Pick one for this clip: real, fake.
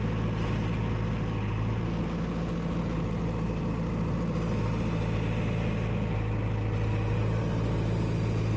real